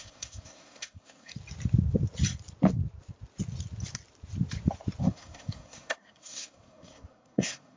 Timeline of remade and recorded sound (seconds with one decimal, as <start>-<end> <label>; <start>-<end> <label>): 0.0-1.3 remade; 1.3-5.0 recorded; 5.0-7.8 remade